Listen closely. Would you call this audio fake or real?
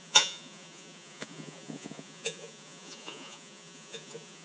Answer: fake